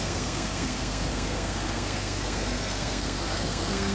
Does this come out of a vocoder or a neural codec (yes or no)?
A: yes